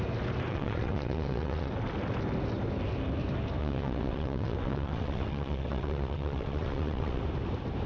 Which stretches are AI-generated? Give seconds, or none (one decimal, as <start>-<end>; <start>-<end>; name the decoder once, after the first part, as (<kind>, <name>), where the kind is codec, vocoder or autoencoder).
0.5-1.7 (vocoder, WaveNeXt); 3.6-7.2